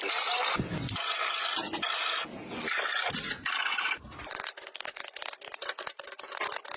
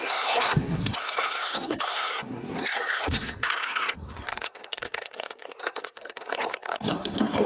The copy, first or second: second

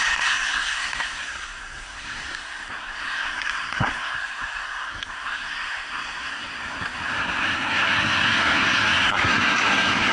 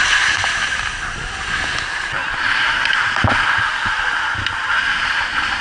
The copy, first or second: first